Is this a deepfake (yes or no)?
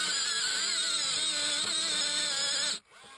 no